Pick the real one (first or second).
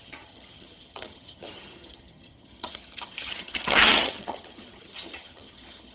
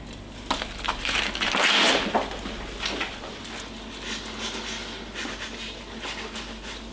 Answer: second